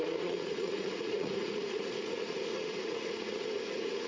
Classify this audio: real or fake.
fake